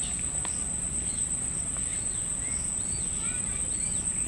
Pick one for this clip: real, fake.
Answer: real